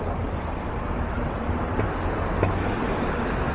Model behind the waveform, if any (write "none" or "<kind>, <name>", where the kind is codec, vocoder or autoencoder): none